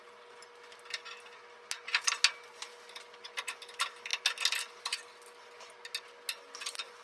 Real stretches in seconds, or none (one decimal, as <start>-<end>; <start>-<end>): 0.0-7.0